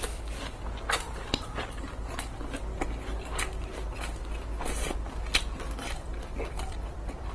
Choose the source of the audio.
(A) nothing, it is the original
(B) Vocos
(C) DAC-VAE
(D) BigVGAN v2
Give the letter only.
A